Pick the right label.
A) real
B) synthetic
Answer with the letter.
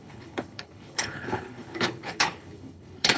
B